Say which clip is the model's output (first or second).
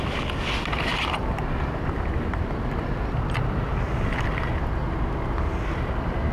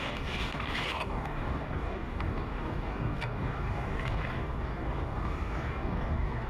second